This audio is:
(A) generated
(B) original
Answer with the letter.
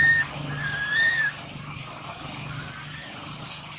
A